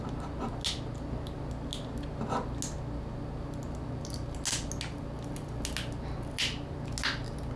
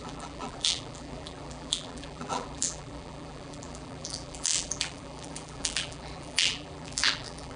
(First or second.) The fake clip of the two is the second